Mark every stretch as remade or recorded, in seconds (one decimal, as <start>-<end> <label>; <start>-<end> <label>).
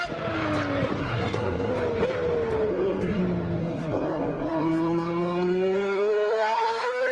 0.0-1.0 recorded; 1.0-1.7 remade; 1.7-2.7 recorded; 2.7-3.2 remade; 3.2-3.6 recorded; 3.6-7.1 remade